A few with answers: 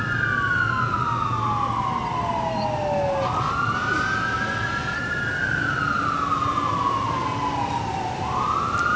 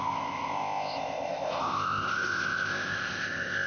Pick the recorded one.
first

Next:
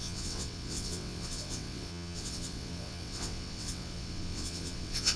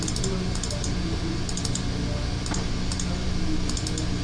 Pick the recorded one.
second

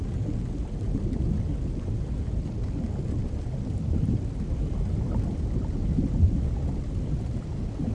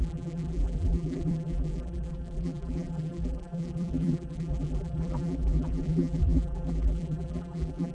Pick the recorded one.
first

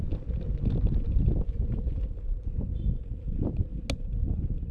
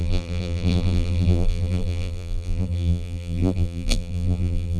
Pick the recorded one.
first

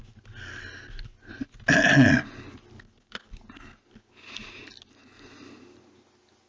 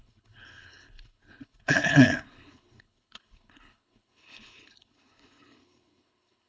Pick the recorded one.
first